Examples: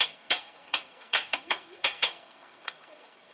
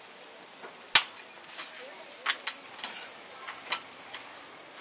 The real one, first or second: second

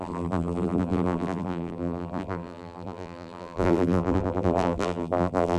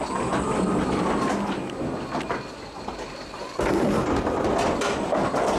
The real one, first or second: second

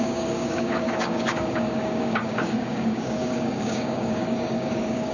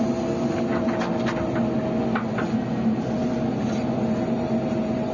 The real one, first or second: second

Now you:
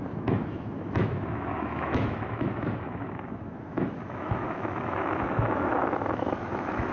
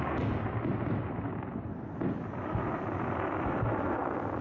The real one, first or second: second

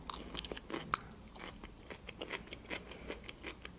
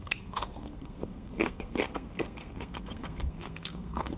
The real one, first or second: first